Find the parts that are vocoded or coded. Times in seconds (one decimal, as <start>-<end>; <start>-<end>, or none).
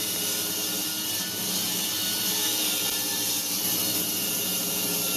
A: 0.0-0.9; 4.0-5.2